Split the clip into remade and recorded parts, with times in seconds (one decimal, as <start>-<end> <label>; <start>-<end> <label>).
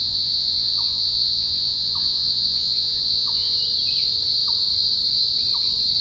0.0-3.6 remade; 3.6-6.0 recorded